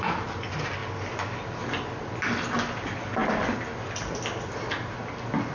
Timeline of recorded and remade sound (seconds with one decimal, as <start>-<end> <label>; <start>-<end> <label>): 0.0-5.5 recorded